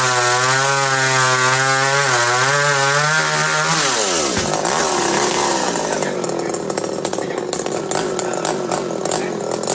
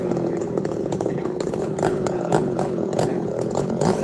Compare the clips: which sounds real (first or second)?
first